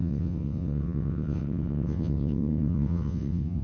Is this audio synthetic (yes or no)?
yes